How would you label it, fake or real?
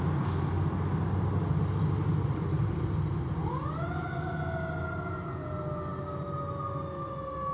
real